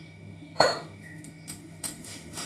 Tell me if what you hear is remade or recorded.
remade